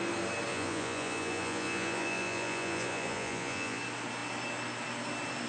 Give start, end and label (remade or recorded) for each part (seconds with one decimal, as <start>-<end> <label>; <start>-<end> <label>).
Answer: 0.0-0.5 recorded; 0.5-3.8 remade; 3.8-5.5 recorded